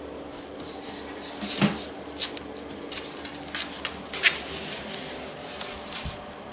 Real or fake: real